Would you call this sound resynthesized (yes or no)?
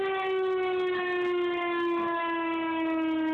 no